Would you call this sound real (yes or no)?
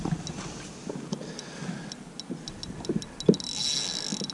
yes